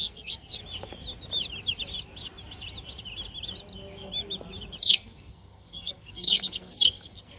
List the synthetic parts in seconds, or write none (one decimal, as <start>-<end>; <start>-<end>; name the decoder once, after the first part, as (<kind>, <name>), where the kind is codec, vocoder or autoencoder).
0.0-0.6 (codec, SNAC); 4.8-7.4